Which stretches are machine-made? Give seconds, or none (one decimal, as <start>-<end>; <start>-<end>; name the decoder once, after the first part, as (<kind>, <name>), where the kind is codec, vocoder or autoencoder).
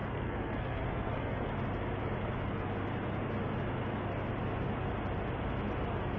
0.0-1.5 (codec, SNAC)